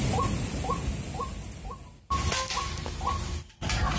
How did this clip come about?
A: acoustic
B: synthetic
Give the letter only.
A